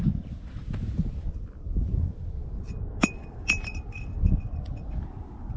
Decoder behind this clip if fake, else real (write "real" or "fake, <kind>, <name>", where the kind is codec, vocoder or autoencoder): real